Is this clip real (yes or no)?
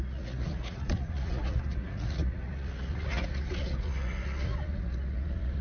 no